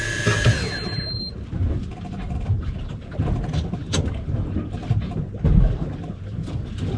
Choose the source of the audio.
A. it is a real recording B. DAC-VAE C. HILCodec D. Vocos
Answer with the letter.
A